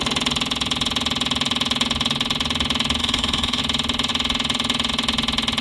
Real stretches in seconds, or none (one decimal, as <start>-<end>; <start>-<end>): 0.0-3.0; 3.6-5.6